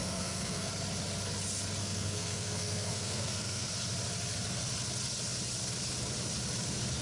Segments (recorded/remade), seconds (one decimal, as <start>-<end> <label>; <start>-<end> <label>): 0.0-0.7 remade; 0.7-1.8 recorded; 1.8-3.7 remade; 3.7-7.0 recorded